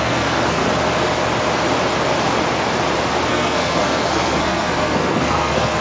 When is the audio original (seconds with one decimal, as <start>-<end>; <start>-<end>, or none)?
0.6-3.3